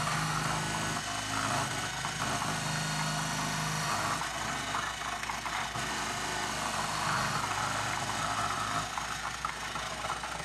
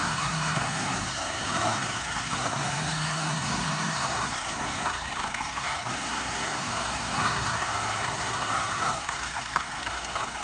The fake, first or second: second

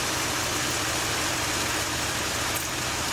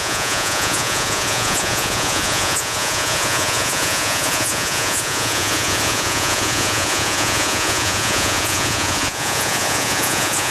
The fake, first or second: second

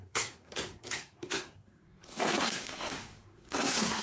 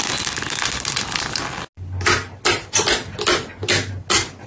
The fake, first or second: first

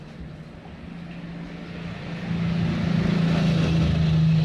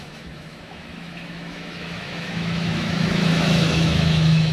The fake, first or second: second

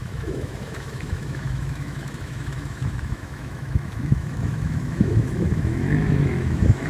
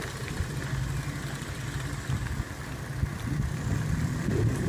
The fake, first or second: first